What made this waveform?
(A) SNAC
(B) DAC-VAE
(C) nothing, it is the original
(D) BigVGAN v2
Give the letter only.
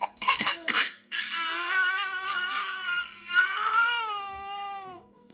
A